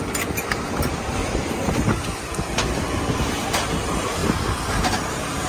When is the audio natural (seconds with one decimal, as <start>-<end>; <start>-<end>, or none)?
0.0-1.2; 1.9-5.5